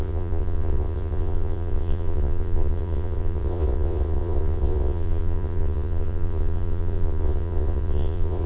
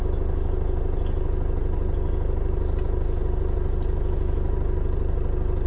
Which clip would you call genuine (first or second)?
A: second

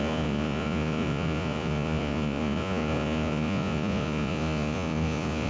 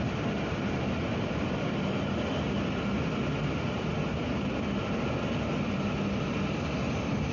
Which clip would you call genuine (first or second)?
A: second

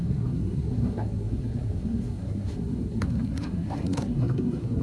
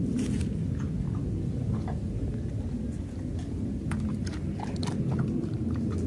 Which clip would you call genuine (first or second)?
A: second